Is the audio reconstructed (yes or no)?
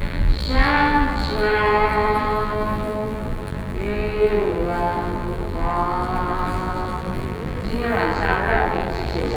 yes